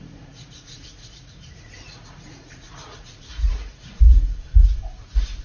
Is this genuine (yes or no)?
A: no